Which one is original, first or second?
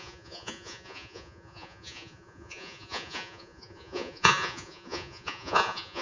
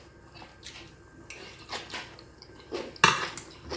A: second